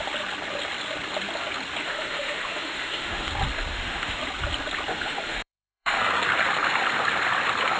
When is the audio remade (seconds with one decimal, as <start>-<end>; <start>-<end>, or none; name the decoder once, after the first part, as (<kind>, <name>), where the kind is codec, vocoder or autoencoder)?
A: 1.8-3.3 (autoencoder, DAC-VAE); 3.7-4.2; 4.9-6.0